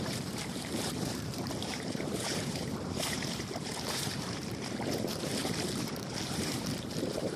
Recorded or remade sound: remade